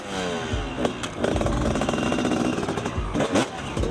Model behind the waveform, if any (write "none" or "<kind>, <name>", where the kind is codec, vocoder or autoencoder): none